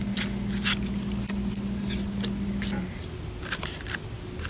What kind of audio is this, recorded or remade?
recorded